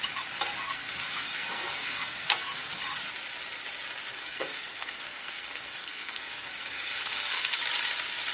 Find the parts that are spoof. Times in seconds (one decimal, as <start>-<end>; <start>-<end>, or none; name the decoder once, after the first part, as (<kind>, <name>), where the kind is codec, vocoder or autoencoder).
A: 0.5-2.8 (codec, SNAC); 4.1-7.6

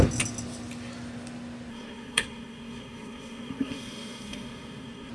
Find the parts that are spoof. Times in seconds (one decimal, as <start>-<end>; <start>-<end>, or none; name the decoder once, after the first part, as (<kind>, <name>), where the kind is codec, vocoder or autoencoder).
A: 1.7-5.1 (codec, SNAC)

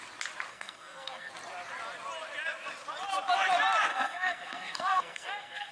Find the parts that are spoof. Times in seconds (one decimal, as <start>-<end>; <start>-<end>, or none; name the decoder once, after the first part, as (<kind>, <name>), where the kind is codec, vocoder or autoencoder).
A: 0.5-1.3 (codec, SNAC); 3.9-5.7

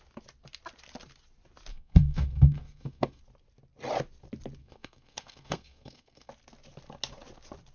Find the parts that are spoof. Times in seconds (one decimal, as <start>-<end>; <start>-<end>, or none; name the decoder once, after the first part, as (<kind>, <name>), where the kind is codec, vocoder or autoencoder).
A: 1.7-3.2 (codec, SNAC); 4.6-6.3

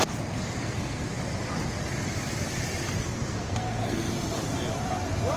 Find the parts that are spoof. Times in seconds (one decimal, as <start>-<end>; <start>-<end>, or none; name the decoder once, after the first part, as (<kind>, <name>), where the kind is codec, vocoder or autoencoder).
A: 0.6-1.1 (codec, SNAC); 3.0-4.1

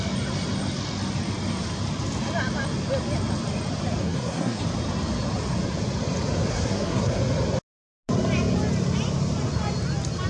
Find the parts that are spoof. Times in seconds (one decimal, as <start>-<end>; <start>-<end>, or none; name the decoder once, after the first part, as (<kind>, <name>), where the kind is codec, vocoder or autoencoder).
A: 4.0-4.6 (codec, SNAC); 6.5-7.2

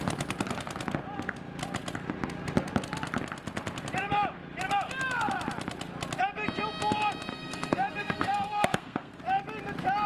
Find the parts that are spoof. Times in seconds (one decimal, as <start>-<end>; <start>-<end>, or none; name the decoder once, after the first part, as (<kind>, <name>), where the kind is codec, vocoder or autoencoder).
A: 7.3-9.2 (codec, SNAC)